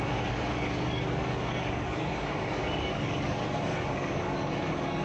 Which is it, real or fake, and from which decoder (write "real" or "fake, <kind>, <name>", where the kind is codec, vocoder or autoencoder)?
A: fake, codec, DAC